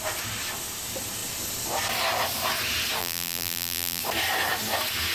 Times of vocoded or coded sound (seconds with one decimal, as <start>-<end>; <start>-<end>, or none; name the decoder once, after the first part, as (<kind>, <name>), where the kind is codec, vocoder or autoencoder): 3.0-4.0 (vocoder, BigVGAN v2)